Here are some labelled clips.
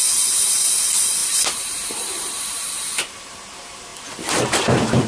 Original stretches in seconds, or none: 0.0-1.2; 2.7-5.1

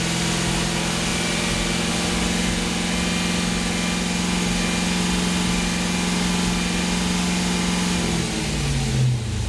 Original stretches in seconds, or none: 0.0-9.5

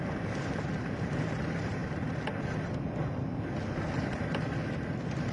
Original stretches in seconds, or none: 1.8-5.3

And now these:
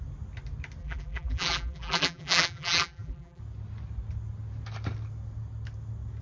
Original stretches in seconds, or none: 0.0-0.8; 3.4-6.2